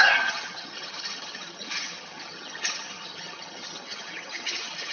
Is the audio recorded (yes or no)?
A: no